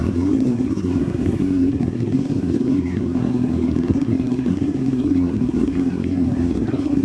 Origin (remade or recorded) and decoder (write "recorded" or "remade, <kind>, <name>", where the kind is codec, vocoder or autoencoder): remade, codec, SNAC